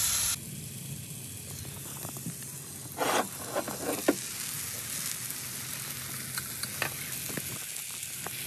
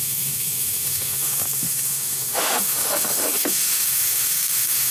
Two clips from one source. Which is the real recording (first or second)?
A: first